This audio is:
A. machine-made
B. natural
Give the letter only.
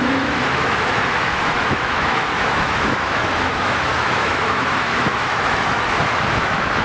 A